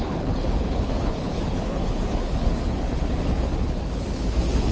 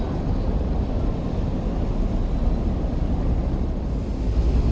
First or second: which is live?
second